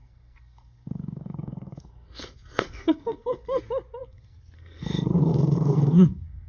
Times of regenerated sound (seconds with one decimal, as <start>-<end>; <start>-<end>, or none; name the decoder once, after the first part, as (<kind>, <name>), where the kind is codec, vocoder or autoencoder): 0.0-3.6 (codec, SNAC); 4.0-6.5